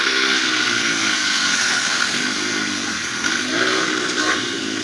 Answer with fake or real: fake